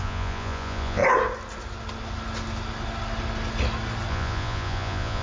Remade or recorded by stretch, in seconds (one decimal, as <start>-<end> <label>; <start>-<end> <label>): 0.0-1.0 remade; 1.0-4.1 recorded; 4.1-5.2 remade